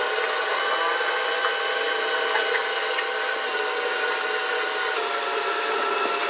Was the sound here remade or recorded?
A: recorded